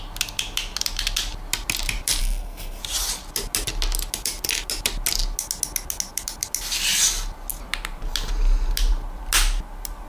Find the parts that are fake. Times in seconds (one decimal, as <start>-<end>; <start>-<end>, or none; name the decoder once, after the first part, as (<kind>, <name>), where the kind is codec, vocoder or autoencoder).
2.2-2.8 (codec, SNAC)